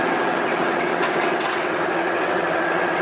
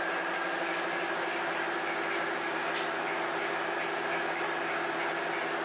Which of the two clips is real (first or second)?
second